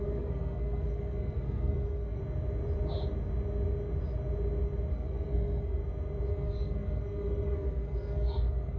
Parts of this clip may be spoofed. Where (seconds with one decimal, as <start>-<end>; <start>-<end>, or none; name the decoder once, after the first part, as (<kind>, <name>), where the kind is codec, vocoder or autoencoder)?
0.0-2.2 (codec, SNAC); 4.9-5.8; 6.3-8.8